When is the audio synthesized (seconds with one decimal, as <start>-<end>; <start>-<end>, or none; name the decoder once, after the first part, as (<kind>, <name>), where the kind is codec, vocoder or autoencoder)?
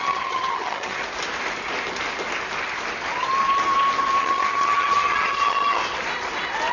0.0-1.0 (vocoder, HiFi-GAN); 4.2-5.8